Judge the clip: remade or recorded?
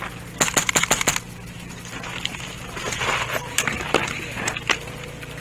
recorded